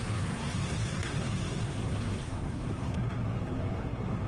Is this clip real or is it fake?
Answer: fake